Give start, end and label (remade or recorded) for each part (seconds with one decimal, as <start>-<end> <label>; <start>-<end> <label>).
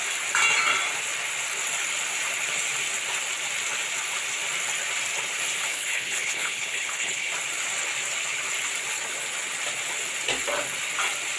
0.0-5.7 recorded; 5.7-7.3 remade; 7.3-11.4 recorded